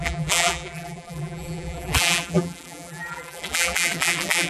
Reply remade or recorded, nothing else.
remade